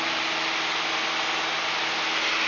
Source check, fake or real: real